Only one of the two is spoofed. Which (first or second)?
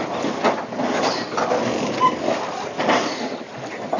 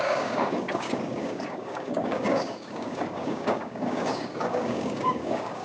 second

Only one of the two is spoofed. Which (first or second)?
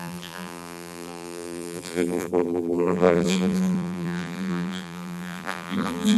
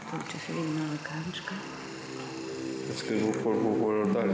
first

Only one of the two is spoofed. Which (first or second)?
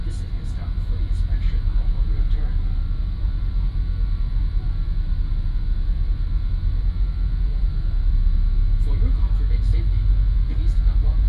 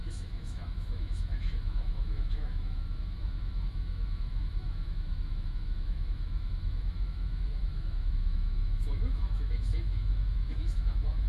second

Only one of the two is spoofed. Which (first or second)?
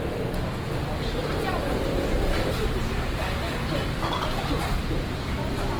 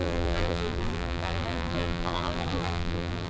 second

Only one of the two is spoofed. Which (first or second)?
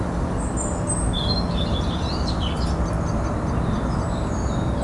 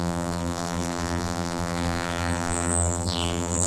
second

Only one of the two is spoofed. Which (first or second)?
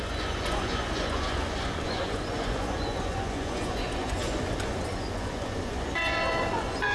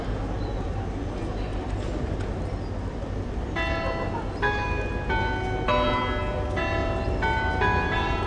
first